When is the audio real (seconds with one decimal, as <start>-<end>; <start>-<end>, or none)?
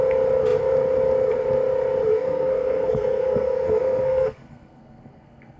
0.0-2.1